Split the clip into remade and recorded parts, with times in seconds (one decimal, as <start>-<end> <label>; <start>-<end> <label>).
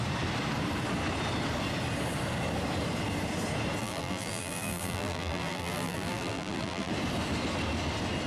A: 0.0-3.8 recorded; 3.8-6.9 remade; 6.9-8.3 recorded